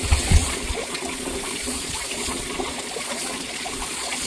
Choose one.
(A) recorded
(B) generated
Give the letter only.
B